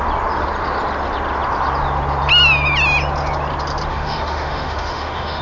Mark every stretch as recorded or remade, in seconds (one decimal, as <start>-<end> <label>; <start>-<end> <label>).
0.0-3.9 recorded; 3.9-5.4 remade

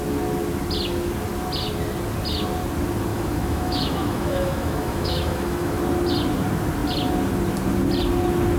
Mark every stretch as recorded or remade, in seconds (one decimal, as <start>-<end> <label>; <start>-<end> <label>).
0.0-3.1 recorded; 3.1-5.8 remade; 5.8-8.6 recorded